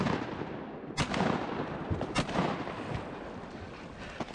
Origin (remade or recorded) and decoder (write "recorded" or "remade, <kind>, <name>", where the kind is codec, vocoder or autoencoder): recorded